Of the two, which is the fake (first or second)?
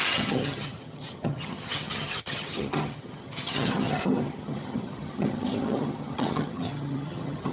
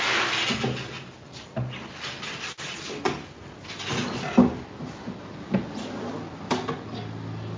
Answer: first